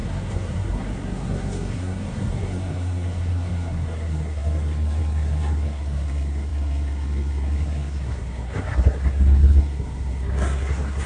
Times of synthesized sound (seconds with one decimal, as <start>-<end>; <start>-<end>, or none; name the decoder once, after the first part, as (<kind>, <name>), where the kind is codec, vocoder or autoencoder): 0.0-11.1 (codec, SNAC)